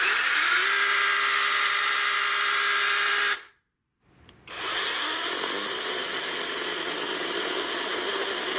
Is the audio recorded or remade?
recorded